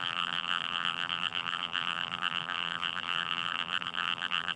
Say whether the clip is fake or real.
fake